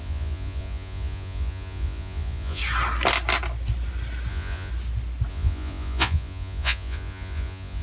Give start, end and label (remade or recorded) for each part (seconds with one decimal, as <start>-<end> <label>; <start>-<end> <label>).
0.0-2.6 remade; 2.6-4.3 recorded; 4.3-4.7 remade; 4.7-5.3 recorded; 5.3-7.8 remade